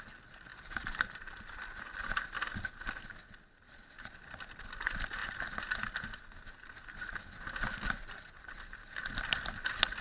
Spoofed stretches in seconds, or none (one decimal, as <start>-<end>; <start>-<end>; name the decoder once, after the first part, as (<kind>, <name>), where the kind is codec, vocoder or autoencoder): 0.5-1.5 (vocoder, BigVGAN v2)